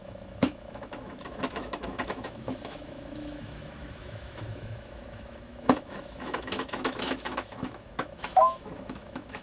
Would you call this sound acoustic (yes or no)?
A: no